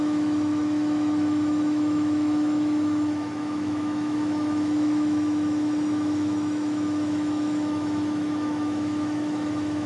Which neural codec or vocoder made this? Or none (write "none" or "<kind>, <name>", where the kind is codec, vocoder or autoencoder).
autoencoder, DAC-VAE